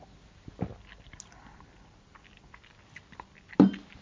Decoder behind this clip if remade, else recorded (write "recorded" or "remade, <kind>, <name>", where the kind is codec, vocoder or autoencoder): recorded